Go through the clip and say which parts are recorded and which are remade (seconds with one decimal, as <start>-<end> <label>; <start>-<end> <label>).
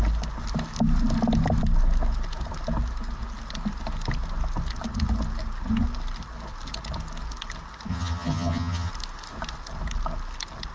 0.0-7.9 recorded; 7.9-8.9 remade; 8.9-10.7 recorded